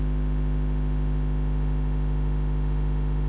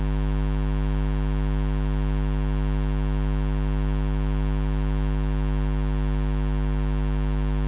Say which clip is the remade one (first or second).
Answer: first